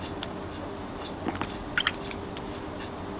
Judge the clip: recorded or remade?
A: recorded